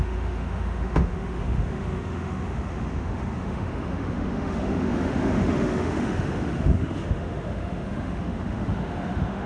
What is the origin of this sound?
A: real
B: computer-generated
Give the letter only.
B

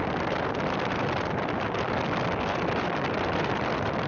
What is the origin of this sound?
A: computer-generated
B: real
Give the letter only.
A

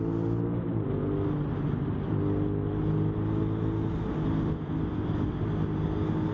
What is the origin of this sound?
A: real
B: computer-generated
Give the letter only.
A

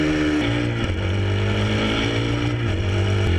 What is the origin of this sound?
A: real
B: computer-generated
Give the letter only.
A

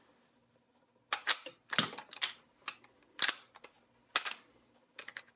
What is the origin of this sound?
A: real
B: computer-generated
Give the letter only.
A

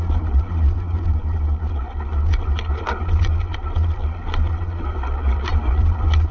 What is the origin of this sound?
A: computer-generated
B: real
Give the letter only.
A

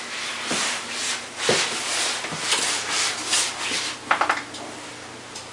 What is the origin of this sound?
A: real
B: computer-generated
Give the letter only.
A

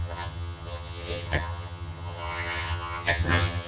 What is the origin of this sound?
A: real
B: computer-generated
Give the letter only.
B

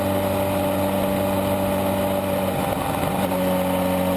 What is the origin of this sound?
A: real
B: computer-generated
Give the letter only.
A